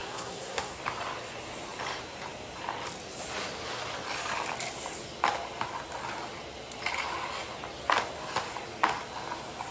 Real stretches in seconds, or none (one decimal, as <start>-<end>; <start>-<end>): 0.8-9.7